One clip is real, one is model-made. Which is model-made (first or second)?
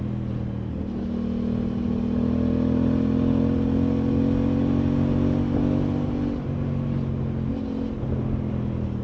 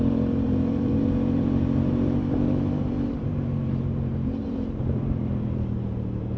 second